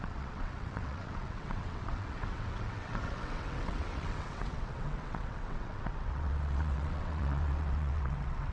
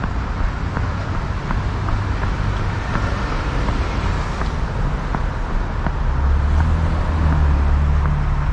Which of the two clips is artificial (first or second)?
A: first